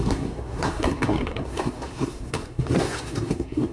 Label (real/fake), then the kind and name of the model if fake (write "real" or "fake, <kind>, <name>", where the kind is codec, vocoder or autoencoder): fake, codec, SNAC